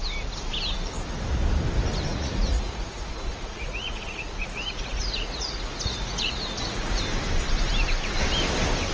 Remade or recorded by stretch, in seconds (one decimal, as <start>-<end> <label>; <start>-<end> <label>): 0.0-2.1 recorded; 2.1-7.0 remade; 7.0-8.9 recorded